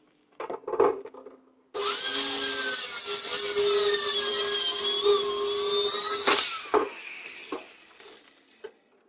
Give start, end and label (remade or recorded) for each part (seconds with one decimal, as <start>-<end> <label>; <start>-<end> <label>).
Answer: 0.0-6.5 recorded; 6.5-7.9 remade; 7.9-9.1 recorded